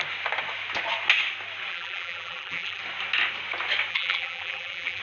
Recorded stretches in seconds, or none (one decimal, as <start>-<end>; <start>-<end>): 0.0-1.7; 2.8-3.9